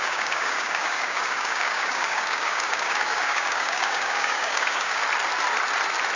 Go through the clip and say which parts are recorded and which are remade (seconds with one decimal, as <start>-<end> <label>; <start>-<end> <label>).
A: 0.0-5.0 remade; 5.0-6.2 recorded